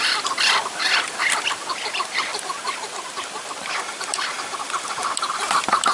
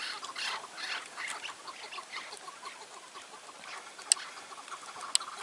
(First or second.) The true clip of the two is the second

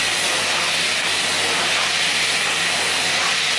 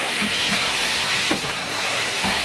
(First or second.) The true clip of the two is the first